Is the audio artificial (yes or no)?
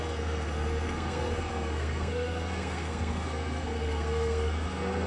yes